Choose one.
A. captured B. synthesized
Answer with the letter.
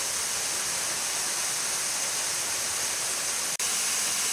A